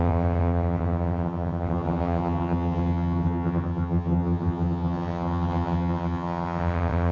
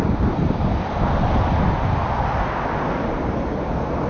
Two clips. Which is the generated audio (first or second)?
first